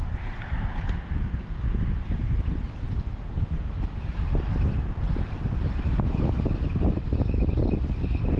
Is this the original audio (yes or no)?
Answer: yes